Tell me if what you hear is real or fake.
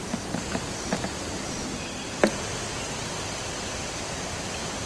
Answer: real